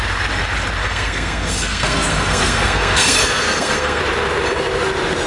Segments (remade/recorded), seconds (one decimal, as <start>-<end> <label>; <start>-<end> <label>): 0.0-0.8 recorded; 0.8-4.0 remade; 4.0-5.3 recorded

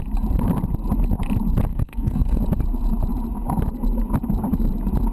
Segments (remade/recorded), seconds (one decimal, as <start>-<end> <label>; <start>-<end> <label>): 0.0-1.7 recorded; 1.7-2.4 remade; 2.4-5.1 recorded

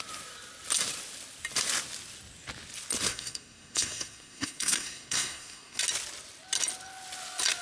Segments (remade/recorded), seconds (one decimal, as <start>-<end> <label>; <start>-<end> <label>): 0.0-3.1 recorded; 3.1-5.8 remade; 5.8-7.6 recorded

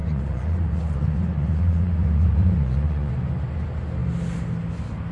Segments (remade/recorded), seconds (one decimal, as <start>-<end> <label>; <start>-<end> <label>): 0.0-3.1 remade; 3.1-5.1 recorded

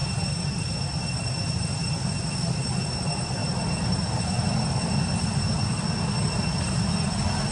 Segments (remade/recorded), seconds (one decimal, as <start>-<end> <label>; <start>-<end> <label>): 0.0-0.6 remade; 0.6-3.4 recorded; 3.4-4.1 remade; 4.1-7.5 recorded

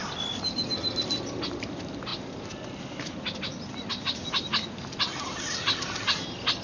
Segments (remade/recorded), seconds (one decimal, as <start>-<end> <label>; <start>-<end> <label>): 0.0-6.6 recorded

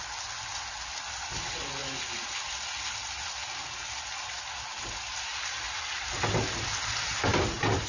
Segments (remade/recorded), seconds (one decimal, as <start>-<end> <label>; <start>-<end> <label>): 0.0-7.9 recorded